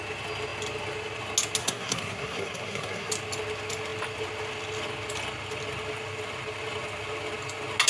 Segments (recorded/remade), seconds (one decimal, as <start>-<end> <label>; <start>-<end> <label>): 0.0-1.6 recorded; 1.6-3.1 remade; 3.1-7.9 recorded